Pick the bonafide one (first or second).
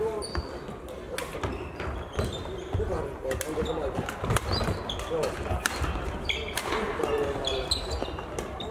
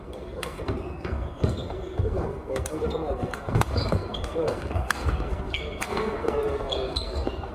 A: first